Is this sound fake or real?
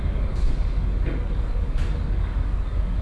fake